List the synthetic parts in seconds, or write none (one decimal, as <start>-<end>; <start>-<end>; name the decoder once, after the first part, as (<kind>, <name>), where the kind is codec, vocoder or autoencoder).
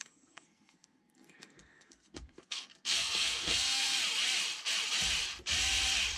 0.0-3.9 (codec, SNAC)